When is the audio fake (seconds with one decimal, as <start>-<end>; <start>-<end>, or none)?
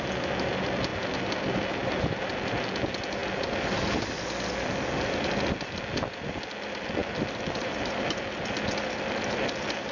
none